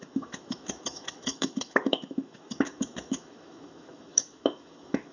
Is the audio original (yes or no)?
no